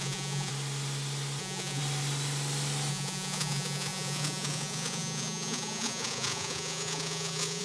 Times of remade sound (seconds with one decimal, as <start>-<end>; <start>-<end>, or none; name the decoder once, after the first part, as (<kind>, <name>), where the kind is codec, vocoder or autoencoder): 0.0-0.5 (vocoder, Vocos); 1.4-1.8; 2.9-7.6